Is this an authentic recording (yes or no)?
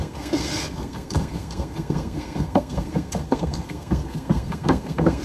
no